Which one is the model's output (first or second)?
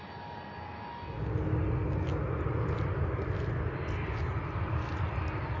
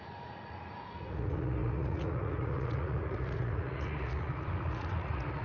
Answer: second